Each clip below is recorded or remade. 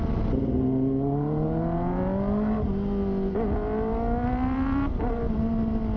recorded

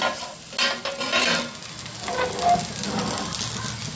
recorded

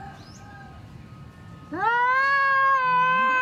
recorded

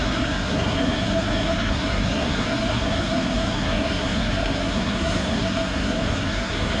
remade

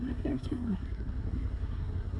remade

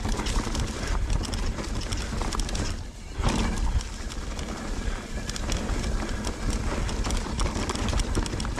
recorded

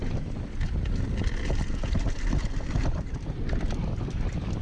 recorded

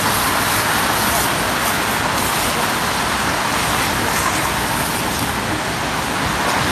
recorded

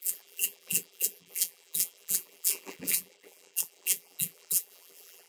remade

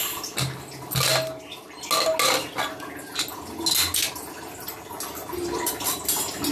recorded